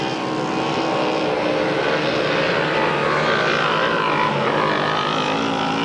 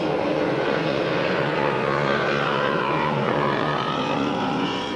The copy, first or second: second